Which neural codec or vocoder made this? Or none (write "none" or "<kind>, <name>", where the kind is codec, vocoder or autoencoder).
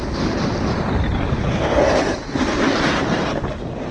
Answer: none